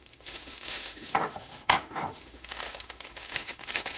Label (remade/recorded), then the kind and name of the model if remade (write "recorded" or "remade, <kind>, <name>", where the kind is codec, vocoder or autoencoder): remade, autoencoder, DAC-VAE